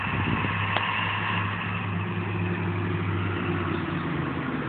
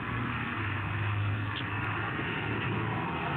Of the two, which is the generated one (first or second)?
second